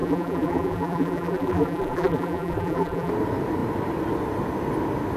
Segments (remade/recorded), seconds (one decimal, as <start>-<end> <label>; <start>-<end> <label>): 0.0-3.1 remade; 3.1-5.2 recorded